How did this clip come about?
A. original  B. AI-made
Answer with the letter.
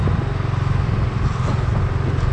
A